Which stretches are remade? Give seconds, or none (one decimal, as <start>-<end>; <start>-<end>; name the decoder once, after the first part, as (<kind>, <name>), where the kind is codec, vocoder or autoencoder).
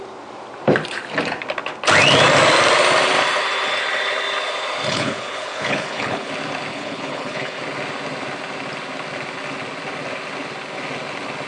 4.9-6.3 (codec, HILCodec); 6.7-7.6